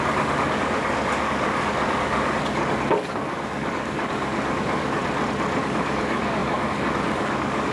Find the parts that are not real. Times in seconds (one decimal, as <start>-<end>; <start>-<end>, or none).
0.0-5.0; 5.6-7.7